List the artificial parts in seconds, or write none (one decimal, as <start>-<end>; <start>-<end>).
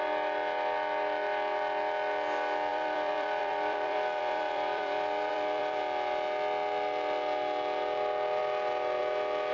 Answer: 2.7-5.8